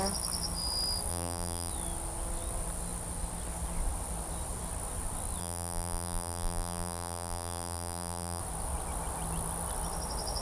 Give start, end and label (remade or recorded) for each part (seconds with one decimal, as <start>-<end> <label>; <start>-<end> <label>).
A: 0.0-1.1 recorded; 1.1-1.7 remade; 1.7-5.4 recorded; 5.4-8.4 remade; 8.4-10.4 recorded